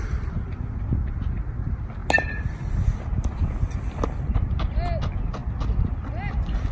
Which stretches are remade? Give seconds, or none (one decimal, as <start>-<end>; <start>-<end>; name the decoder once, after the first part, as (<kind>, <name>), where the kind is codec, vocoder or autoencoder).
none